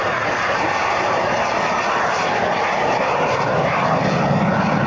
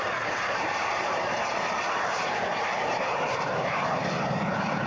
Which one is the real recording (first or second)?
first